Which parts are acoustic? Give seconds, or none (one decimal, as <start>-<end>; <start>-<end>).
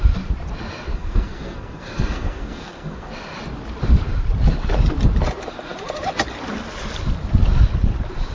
0.0-0.9; 3.1-8.3